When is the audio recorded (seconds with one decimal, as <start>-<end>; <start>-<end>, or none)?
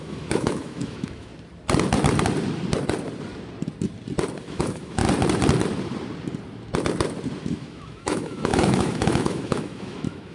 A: 1.3-4.4; 5.0-7.4